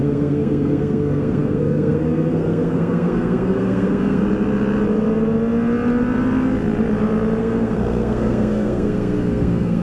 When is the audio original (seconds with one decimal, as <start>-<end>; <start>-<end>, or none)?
4.2-7.4